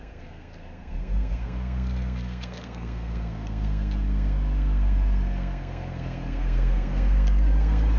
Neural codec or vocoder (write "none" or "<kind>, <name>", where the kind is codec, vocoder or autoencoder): codec, SNAC